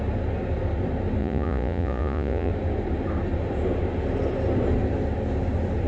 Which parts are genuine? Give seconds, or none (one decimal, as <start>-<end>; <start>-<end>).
0.0-1.2; 2.5-5.9